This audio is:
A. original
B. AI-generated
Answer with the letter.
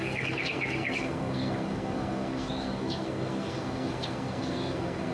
B